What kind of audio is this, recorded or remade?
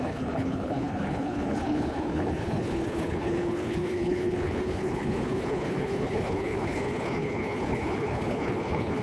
remade